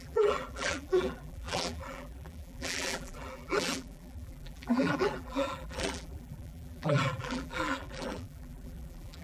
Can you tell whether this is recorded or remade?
remade